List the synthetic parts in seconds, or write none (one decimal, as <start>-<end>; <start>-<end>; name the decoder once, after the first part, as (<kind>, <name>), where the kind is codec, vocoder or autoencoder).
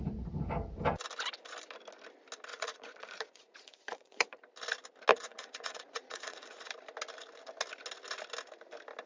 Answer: 2.5-4.4 (vocoder, Vocos); 5.1-6.7